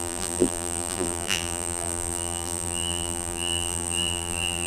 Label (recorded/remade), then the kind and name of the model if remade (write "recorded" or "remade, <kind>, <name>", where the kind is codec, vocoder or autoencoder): remade, vocoder, BigVGAN v2